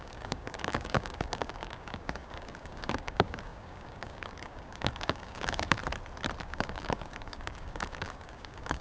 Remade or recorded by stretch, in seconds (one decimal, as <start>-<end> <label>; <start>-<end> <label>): 0.0-5.8 remade; 5.8-6.4 recorded; 6.4-8.8 remade